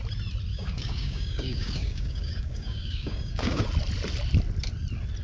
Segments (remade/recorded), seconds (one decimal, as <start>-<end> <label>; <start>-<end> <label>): 0.0-0.5 recorded; 0.5-3.6 remade; 3.6-5.2 recorded